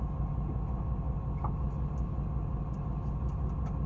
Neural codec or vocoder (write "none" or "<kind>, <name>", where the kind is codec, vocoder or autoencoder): none